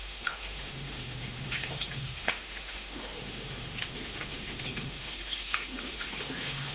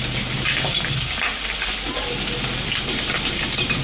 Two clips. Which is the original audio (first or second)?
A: second